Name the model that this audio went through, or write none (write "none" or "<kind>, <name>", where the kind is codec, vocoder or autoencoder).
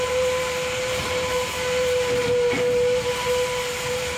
vocoder, BigVGAN v2